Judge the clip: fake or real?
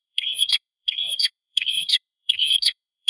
fake